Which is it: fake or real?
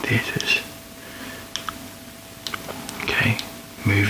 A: real